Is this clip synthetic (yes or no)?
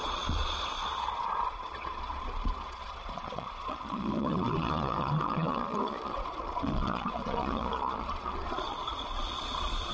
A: yes